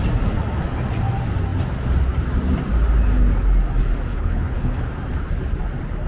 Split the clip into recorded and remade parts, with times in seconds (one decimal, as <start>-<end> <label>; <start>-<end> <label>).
0.0-4.1 recorded; 4.1-4.7 remade; 4.7-6.1 recorded